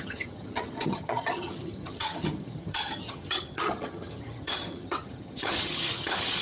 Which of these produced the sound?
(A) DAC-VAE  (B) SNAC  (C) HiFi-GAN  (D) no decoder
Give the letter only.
C